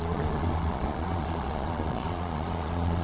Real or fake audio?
fake